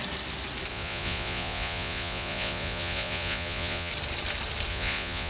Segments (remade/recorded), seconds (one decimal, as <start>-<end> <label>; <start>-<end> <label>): 0.0-0.7 recorded; 0.7-3.9 remade; 3.9-4.7 recorded; 4.7-5.3 remade